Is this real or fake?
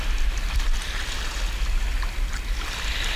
real